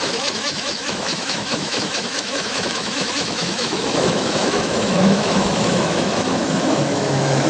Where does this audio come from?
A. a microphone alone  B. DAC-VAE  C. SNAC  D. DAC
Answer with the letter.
B